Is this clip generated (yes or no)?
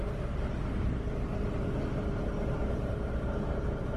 yes